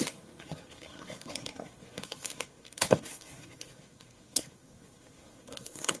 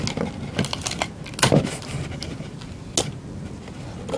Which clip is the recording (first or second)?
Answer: second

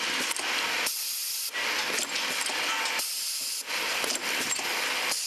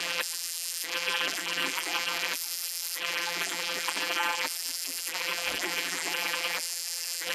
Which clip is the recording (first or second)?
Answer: first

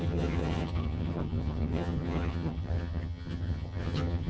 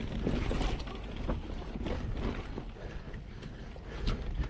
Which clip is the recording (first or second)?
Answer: second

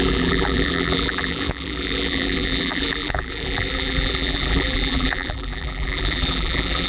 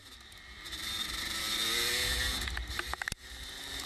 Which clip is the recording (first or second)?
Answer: second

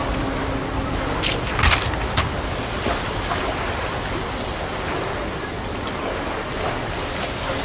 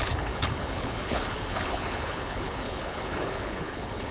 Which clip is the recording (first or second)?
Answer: first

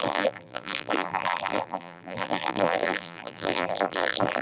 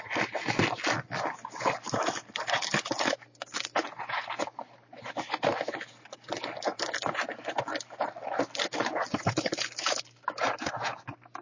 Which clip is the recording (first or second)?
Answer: second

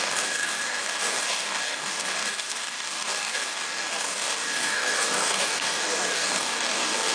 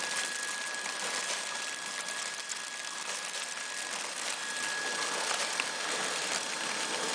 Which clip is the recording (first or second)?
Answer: second